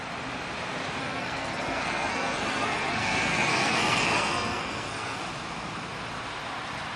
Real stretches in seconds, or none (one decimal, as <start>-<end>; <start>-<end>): 0.0-1.0; 5.2-7.0